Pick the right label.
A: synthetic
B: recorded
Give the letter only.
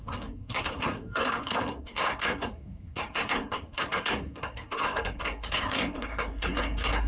A